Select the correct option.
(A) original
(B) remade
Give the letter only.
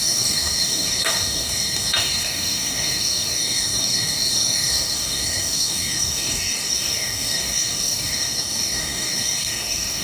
B